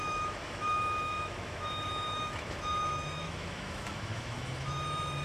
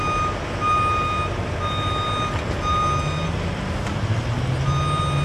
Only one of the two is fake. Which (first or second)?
first